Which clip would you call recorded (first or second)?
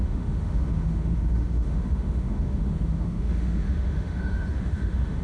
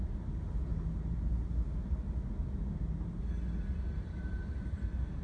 second